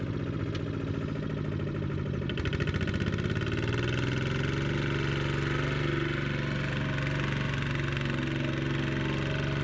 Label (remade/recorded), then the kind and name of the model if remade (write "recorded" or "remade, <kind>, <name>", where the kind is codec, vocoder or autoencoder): recorded